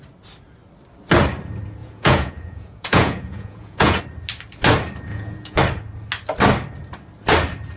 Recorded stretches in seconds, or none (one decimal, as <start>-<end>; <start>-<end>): 0.0-1.8; 4.0-5.1; 5.6-7.8

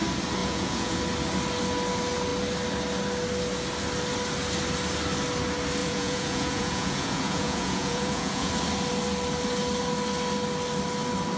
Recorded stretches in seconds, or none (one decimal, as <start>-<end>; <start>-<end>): 0.0-0.4; 1.0-5.8; 8.5-11.4

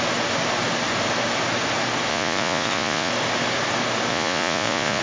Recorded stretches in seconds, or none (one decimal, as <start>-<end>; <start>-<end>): 0.0-2.1; 3.1-4.1

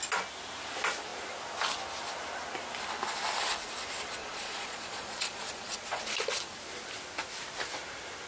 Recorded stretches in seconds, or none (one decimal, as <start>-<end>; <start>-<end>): 0.0-4.2; 6.0-8.3

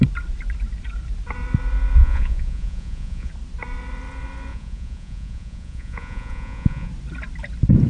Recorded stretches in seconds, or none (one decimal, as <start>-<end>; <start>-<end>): 0.0-2.0; 3.3-4.5; 6.9-7.9